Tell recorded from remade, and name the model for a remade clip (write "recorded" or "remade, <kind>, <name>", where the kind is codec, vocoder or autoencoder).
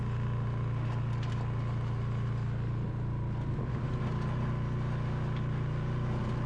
recorded